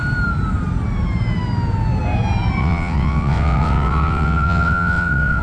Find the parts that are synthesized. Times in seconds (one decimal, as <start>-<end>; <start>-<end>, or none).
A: 2.6-5.4